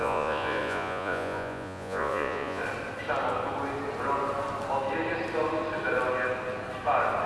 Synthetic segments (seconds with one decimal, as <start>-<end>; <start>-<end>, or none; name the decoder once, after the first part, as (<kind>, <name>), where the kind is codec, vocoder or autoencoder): 0.0-2.6 (vocoder, Vocos)